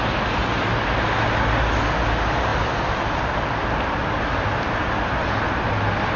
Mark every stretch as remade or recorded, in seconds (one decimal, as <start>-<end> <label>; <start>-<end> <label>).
0.0-6.2 recorded